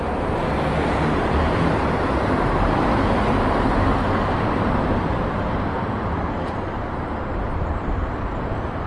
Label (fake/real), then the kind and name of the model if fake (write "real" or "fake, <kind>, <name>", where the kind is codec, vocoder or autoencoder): fake, vocoder, BigVGAN v2